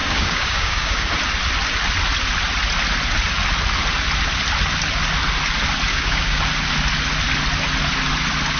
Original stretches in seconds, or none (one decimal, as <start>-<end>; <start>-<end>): 1.1-5.9; 6.4-8.6